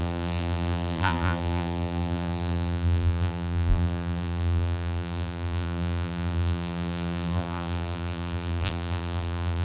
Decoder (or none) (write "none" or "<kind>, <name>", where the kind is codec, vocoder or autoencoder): vocoder, BigVGAN v2